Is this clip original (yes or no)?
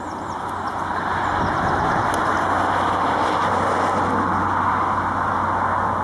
yes